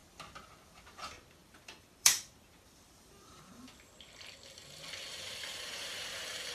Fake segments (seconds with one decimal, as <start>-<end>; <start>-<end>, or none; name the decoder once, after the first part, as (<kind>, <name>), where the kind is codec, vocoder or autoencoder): 1.4-3.5 (vocoder, BigVGAN v2); 5.1-6.5